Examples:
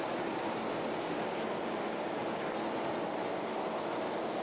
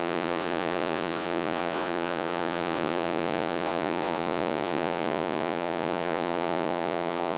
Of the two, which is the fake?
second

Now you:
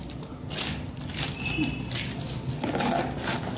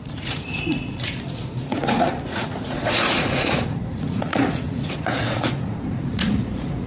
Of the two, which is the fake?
second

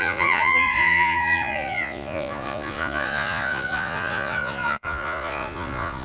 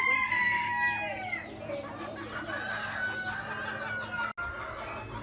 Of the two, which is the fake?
first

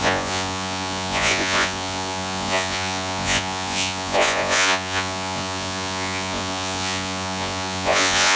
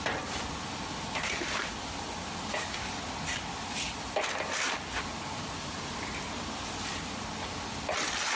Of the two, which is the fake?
first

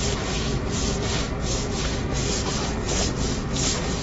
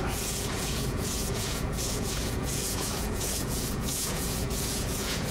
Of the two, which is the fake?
second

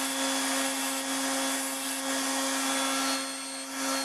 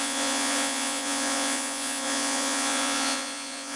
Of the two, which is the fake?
second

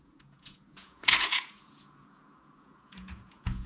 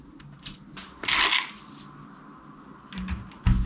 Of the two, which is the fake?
first